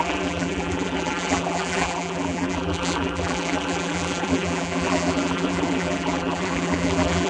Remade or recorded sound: remade